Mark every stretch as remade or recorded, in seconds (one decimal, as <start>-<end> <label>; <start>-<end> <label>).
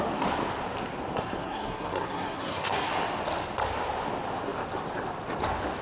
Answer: 0.0-1.4 recorded; 1.4-2.9 remade; 2.9-5.8 recorded